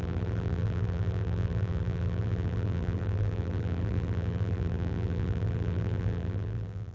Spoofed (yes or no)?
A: yes